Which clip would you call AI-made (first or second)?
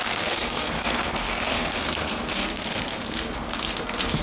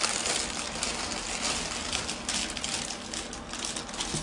first